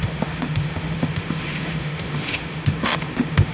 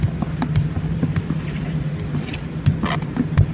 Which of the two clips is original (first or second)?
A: second